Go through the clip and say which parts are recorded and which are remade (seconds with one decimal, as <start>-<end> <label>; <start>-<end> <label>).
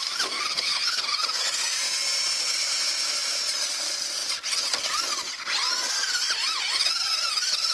0.0-0.5 recorded; 0.5-1.0 remade; 1.0-7.7 recorded